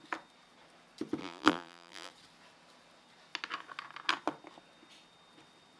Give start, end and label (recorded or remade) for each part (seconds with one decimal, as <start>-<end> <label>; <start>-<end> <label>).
0.0-1.2 recorded; 1.2-2.1 remade; 2.1-5.8 recorded